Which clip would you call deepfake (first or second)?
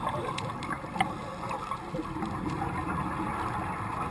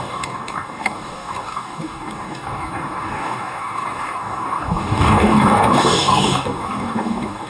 second